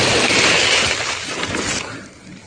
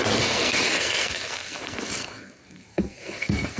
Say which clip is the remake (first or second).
second